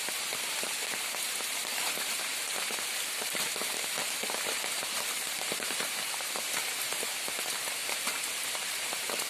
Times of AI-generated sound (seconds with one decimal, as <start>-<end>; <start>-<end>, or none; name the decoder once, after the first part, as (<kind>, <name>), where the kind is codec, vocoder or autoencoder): 0.0-9.3 (vocoder, BigVGAN v2)